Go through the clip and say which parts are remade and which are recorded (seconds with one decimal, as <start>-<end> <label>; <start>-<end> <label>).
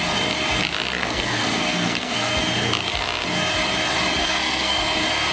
0.0-1.0 recorded; 1.0-2.4 remade; 2.4-4.2 recorded; 4.2-4.8 remade; 4.8-5.3 recorded